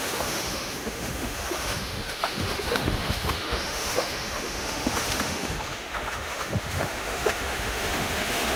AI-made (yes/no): yes